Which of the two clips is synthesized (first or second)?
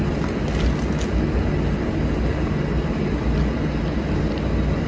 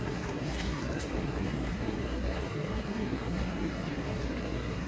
second